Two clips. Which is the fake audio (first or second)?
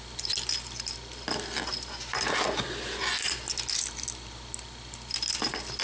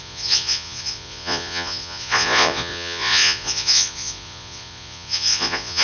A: second